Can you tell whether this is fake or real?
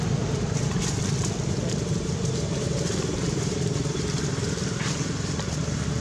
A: fake